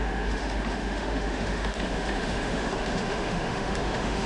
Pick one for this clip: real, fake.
fake